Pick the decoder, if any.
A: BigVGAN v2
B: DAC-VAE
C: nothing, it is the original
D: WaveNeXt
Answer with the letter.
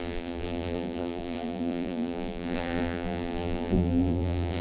A